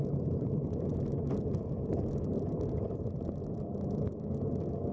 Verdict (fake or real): real